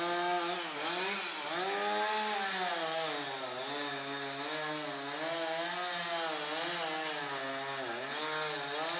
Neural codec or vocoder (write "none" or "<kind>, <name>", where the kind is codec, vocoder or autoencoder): none